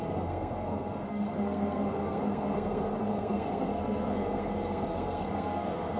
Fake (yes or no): yes